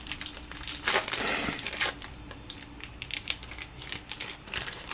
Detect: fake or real fake